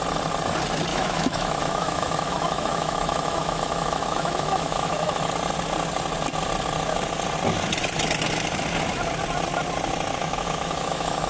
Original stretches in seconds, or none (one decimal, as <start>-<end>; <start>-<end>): 0.0-0.9; 5.3-10.2